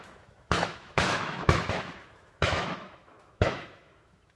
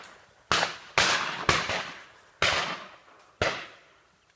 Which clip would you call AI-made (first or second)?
first